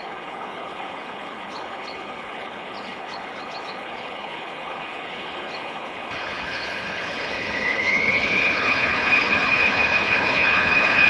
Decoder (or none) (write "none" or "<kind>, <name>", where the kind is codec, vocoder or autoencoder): codec, HILCodec